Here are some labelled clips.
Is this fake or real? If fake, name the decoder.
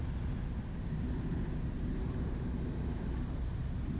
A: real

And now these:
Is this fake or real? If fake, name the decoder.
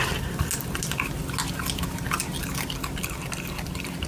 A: real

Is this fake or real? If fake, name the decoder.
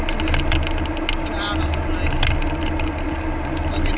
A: real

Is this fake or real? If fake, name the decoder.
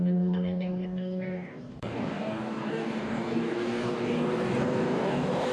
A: fake, codec, DAC